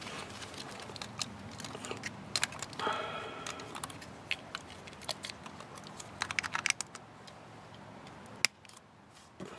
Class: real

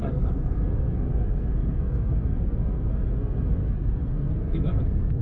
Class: fake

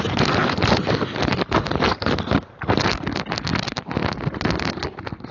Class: real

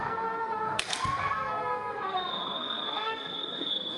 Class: fake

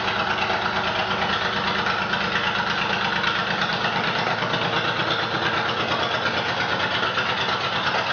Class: real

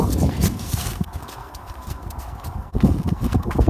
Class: fake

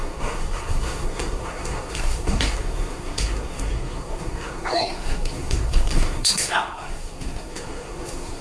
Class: fake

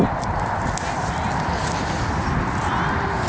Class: real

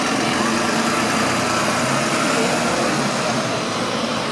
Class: real